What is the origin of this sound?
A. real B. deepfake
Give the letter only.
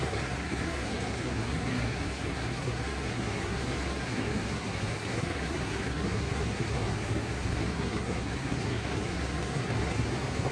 B